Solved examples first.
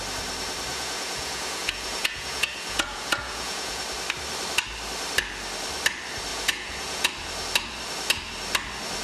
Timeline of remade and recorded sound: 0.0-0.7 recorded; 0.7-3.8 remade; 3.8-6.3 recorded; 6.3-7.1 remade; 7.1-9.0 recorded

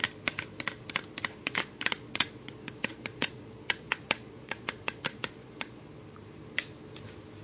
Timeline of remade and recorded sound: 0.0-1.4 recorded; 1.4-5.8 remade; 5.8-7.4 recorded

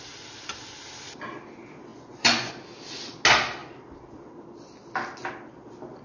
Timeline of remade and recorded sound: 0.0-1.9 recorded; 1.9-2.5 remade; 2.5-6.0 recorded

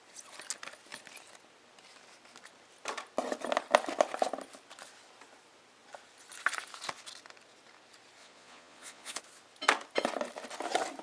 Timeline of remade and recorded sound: 0.0-8.2 recorded; 8.2-9.2 remade; 9.2-11.0 recorded